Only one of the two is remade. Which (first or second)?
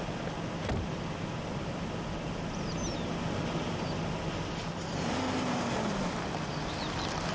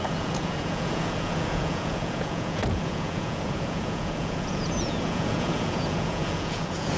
second